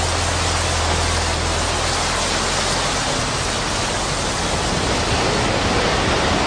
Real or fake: real